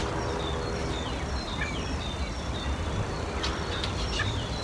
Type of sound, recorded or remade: remade